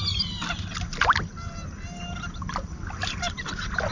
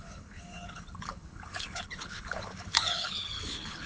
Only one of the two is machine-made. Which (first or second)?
second